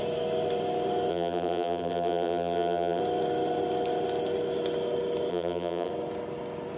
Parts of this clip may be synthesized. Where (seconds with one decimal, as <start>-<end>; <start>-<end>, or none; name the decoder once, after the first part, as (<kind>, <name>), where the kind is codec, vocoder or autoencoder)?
1.1-3.0 (vocoder, BigVGAN v2); 5.3-5.9